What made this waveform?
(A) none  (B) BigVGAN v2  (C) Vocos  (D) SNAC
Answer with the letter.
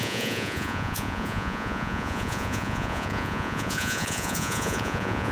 C